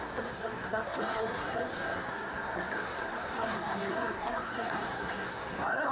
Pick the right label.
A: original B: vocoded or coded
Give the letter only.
B